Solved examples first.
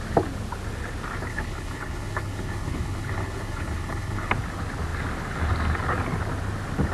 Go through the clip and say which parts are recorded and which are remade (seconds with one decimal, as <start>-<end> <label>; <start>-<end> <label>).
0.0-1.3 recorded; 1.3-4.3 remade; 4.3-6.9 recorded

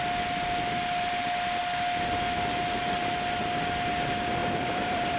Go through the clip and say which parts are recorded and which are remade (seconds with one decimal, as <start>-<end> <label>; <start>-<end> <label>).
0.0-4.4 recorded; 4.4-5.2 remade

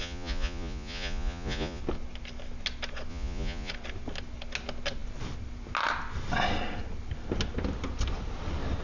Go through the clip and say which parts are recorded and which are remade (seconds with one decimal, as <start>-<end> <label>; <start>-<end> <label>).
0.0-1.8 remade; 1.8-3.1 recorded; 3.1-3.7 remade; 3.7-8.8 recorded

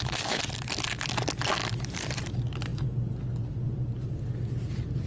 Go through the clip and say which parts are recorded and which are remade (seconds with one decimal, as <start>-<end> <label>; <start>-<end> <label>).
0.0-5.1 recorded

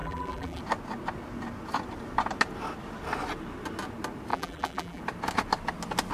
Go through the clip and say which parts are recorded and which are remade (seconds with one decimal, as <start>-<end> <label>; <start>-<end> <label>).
0.0-0.6 remade; 0.6-4.3 recorded; 4.3-5.0 remade; 5.0-6.1 recorded

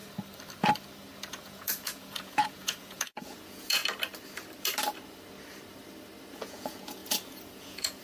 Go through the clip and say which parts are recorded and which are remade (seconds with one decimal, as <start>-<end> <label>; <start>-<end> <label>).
0.0-1.3 recorded; 1.3-3.8 remade; 3.8-6.3 recorded; 6.3-8.0 remade